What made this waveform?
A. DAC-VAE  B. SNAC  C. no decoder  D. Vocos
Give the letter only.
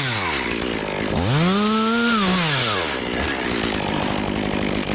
C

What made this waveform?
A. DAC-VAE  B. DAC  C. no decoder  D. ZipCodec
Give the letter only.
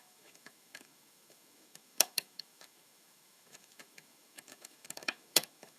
A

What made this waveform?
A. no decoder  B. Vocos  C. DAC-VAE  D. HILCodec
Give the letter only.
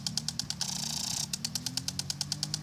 A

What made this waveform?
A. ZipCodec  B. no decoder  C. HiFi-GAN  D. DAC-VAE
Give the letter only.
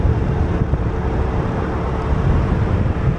B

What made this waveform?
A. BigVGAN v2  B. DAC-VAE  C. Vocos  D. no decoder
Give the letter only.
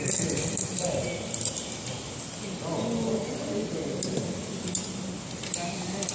D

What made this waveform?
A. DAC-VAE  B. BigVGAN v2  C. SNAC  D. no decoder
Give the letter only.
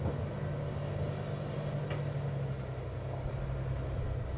D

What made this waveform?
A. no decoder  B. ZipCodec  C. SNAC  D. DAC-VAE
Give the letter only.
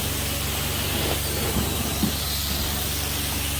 A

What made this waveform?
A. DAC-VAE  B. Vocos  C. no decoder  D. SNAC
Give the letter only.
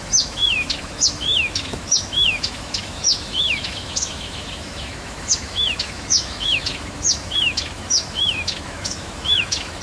A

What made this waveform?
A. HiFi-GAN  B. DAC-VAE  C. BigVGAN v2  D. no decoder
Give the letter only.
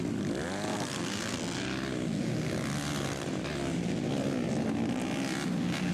D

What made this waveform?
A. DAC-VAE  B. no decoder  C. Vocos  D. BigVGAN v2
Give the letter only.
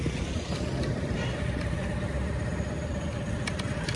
B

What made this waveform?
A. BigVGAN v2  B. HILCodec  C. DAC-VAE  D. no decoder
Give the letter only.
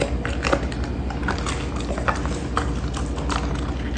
D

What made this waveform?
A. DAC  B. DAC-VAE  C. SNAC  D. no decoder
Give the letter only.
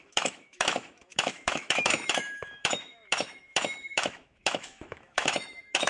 B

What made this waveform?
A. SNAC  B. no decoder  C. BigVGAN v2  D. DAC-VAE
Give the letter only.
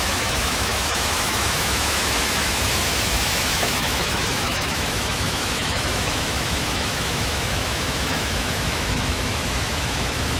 D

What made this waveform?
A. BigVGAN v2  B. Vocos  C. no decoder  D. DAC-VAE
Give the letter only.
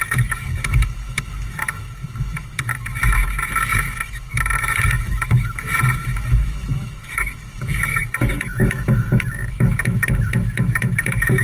D